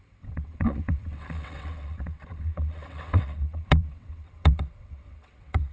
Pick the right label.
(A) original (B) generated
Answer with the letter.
B